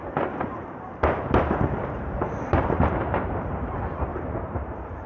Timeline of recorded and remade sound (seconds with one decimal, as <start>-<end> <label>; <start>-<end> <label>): 0.0-0.5 recorded; 0.5-3.5 remade; 3.5-4.1 recorded; 4.1-5.1 remade